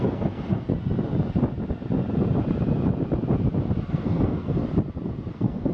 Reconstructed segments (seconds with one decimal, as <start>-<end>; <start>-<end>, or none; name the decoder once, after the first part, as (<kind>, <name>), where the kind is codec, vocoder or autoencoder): 0.0-0.7 (codec, SNAC); 3.9-4.6; 5.3-5.7